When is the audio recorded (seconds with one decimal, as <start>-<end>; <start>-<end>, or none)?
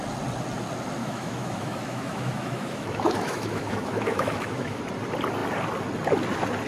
0.0-1.0; 4.8-6.7